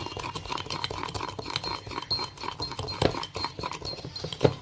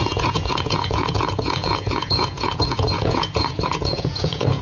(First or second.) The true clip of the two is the first